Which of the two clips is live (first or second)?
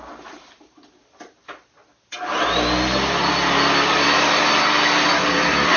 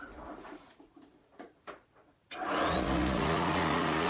first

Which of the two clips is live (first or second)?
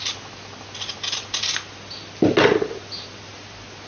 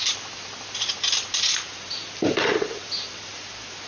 first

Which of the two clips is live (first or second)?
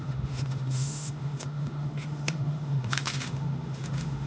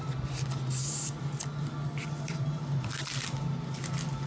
second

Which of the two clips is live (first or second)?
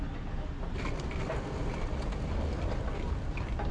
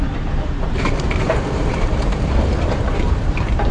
first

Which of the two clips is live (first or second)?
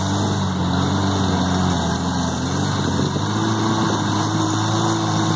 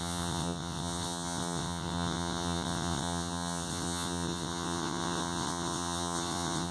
first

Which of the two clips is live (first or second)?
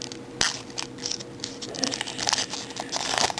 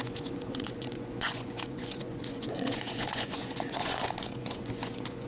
first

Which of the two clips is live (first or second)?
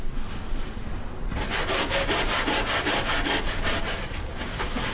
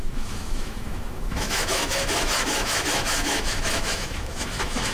first